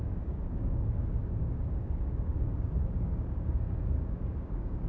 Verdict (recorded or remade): remade